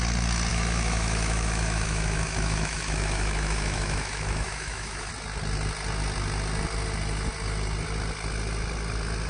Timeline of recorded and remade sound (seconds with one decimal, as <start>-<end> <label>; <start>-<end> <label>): 0.0-0.5 recorded; 0.5-5.1 remade; 5.1-9.3 recorded